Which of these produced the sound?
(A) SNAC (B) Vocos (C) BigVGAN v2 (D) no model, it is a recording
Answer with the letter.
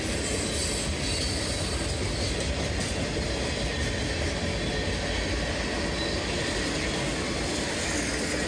D